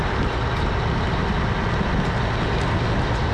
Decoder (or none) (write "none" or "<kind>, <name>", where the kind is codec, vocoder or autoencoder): none